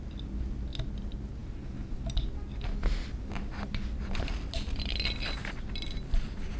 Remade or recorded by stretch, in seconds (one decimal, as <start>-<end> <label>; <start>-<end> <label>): 0.0-6.6 recorded